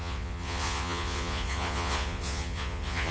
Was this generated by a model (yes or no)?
yes